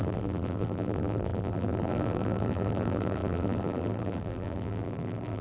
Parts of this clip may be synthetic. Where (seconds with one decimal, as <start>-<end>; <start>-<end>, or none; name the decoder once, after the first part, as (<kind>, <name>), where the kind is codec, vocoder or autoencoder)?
0.0-5.4 (vocoder, BigVGAN v2)